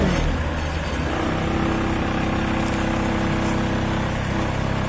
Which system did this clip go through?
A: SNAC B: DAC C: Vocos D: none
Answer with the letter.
D